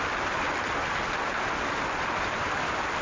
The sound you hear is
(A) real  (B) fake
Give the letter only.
A